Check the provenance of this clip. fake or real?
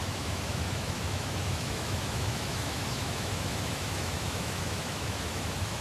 fake